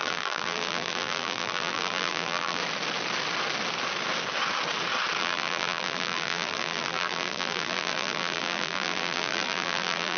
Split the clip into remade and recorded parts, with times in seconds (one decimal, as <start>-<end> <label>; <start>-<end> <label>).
0.0-2.6 remade; 2.6-5.2 recorded; 5.2-10.2 remade